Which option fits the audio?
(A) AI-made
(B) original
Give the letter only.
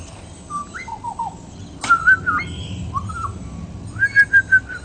B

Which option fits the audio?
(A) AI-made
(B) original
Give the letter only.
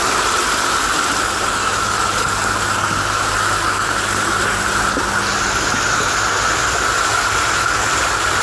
B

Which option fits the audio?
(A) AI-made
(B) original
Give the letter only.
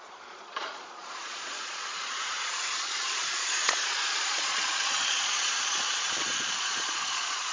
A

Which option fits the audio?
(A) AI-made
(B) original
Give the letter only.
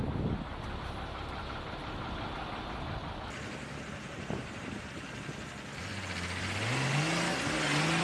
B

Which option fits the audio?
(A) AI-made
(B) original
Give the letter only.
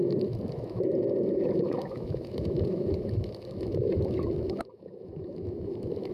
A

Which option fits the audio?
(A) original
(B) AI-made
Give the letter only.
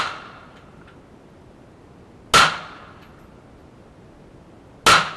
A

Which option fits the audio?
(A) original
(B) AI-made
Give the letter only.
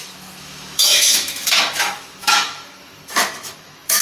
B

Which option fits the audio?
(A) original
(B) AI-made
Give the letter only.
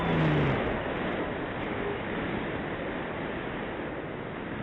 A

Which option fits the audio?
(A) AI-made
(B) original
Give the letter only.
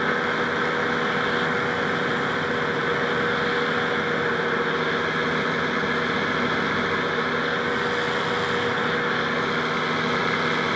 B